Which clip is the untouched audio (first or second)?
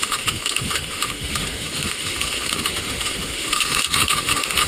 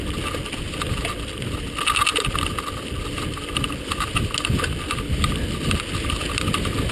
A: second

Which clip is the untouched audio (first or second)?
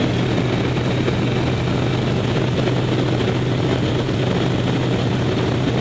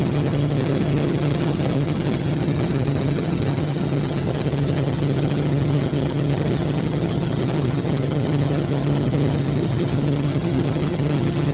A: first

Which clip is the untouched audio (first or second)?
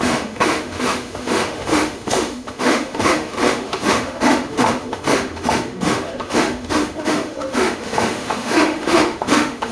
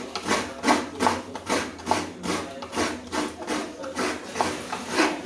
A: second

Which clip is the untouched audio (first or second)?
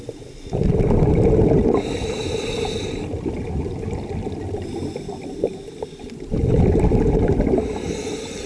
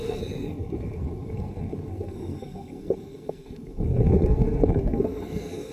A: first